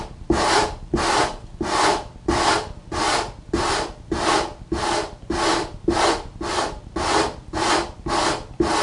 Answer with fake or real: real